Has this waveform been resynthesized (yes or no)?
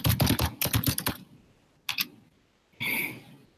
no